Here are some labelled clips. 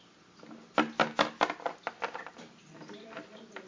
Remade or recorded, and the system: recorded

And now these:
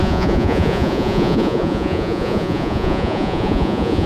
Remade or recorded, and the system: remade, vocoder, Vocos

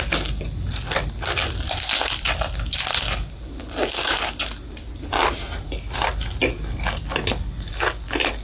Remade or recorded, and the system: recorded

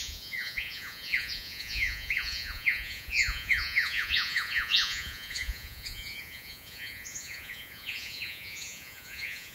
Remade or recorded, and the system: remade, vocoder, Vocos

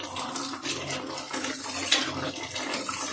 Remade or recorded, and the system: recorded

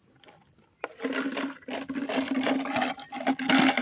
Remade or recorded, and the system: recorded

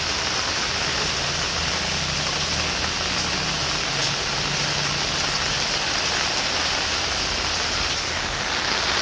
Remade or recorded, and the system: recorded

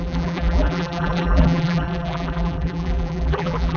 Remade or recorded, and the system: remade, vocoder, BigVGAN v2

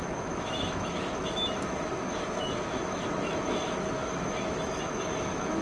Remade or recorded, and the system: remade, autoencoder, DAC-VAE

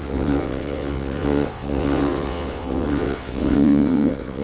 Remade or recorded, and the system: remade, vocoder, WaveNeXt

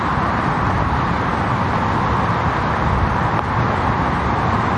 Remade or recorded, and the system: recorded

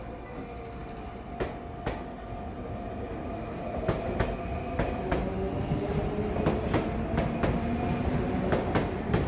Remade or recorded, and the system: recorded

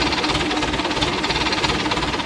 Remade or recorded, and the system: recorded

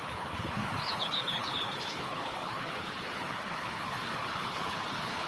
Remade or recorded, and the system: remade, codec, HILCodec